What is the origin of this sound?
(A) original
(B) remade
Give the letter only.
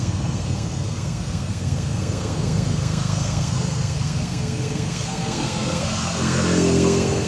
B